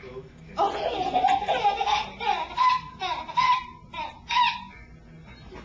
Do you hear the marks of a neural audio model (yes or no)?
no